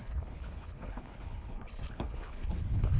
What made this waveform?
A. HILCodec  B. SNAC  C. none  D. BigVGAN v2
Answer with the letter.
A